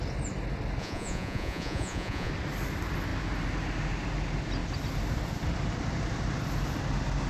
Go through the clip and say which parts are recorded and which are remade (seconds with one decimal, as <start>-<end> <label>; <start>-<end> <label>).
0.0-0.8 recorded; 0.8-2.3 remade; 2.3-7.3 recorded